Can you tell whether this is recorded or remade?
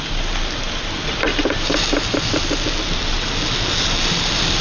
recorded